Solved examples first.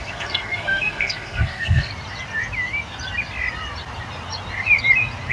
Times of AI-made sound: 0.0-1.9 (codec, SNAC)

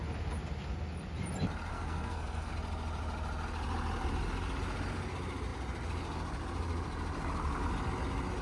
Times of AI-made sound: 1.7-2.5 (codec, SNAC)

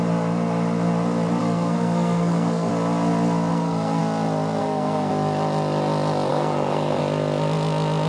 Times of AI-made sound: 1.4-2.7 (codec, SNAC); 3.5-4.0; 4.6-5.1; 6.3-7.0

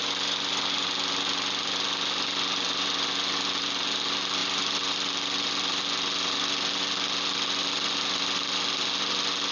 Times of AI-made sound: none